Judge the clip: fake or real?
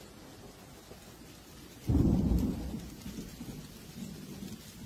real